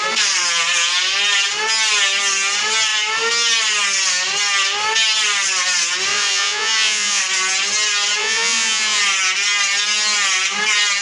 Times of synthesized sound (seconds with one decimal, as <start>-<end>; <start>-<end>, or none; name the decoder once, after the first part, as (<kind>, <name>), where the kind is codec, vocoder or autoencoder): 6.1-7.2 (vocoder, Vocos); 8.2-9.0